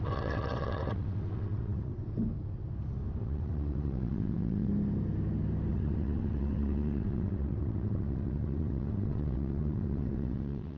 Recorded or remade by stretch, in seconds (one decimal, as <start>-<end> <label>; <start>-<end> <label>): 0.0-1.9 remade; 1.9-3.2 recorded; 3.2-4.7 remade; 4.7-5.7 recorded; 5.7-10.8 remade